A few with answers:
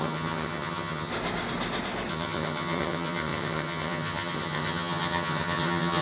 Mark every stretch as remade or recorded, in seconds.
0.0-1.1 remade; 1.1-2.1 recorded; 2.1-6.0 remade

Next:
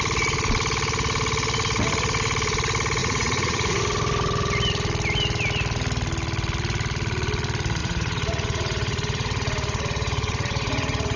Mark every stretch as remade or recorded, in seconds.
0.0-3.0 recorded; 3.0-3.8 remade; 3.8-7.8 recorded; 7.8-11.2 remade